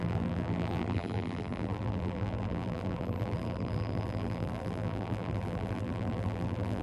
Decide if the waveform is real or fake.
fake